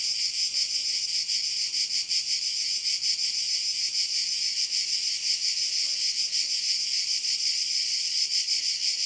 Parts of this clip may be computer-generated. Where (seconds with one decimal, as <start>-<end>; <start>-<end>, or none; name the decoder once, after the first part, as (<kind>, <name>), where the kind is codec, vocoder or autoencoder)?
7.1-8.6 (vocoder, Vocos)